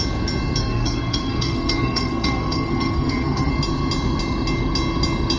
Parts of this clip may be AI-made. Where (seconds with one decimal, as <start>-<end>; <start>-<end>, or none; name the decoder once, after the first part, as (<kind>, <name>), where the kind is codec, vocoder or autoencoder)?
0.6-3.5 (codec, SNAC)